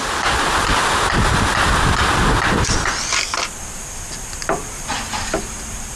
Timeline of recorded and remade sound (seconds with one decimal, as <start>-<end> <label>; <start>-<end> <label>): 0.0-6.0 recorded